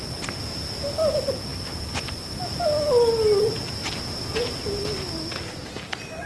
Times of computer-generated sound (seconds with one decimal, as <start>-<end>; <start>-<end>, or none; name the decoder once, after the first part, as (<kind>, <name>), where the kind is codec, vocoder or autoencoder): none